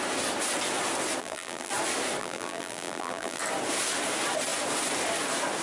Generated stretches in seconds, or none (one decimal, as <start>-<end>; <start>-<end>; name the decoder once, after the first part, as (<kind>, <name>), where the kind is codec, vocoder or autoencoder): 1.2-1.7 (vocoder, BigVGAN v2); 2.2-3.4